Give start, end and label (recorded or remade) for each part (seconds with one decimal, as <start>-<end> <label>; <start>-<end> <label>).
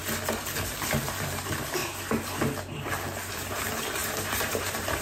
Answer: 0.0-0.7 recorded; 0.7-1.8 remade; 1.8-3.3 recorded; 3.3-5.0 remade